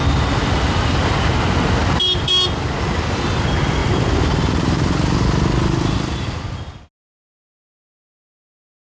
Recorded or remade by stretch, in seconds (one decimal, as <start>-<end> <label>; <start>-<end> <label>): 0.0-8.8 recorded